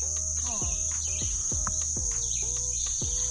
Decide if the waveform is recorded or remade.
recorded